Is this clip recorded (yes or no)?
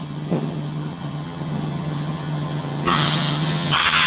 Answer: no